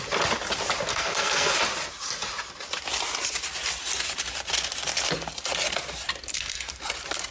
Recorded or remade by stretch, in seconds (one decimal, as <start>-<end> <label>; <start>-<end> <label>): 0.0-0.9 recorded; 0.9-1.5 remade; 1.5-6.3 recorded; 6.3-6.8 remade; 6.8-7.3 recorded